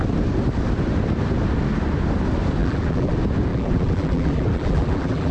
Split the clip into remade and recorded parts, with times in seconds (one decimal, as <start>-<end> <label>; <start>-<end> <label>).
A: 0.0-2.6 recorded; 2.6-3.1 remade; 3.1-3.5 recorded; 3.5-5.3 remade